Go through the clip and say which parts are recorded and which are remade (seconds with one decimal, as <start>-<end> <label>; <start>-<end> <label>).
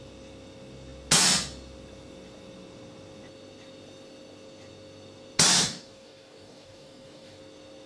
0.0-5.6 recorded; 5.6-7.4 remade; 7.4-7.9 recorded